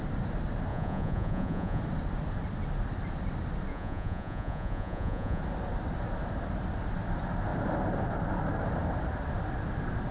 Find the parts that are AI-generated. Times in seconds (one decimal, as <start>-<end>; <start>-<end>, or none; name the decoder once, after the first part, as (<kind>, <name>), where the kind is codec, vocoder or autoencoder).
0.7-1.8 (vocoder, Vocos); 3.7-5.4